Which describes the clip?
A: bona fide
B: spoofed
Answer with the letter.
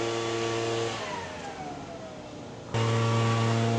A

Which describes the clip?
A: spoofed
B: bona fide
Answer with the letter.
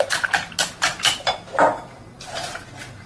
B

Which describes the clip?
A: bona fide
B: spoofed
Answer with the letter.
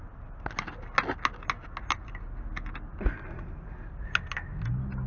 A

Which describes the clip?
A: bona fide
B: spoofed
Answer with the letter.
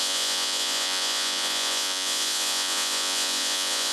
B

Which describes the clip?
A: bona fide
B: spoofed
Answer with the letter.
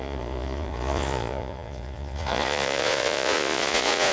B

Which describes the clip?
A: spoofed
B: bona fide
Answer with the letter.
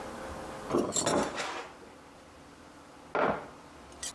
B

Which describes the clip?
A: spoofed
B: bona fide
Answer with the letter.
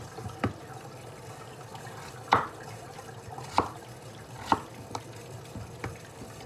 B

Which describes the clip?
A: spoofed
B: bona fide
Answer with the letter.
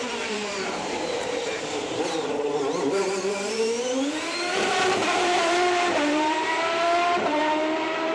A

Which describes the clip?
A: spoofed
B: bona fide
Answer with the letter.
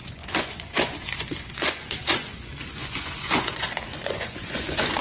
A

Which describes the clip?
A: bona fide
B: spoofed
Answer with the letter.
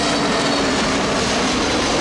A